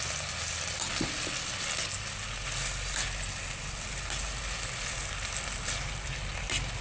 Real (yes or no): yes